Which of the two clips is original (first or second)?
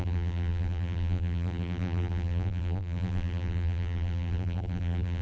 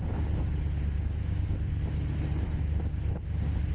second